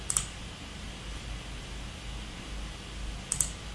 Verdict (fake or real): real